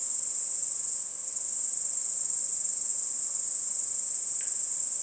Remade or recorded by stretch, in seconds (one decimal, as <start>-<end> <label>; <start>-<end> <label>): 0.0-1.7 recorded; 1.7-2.4 remade; 2.4-5.0 recorded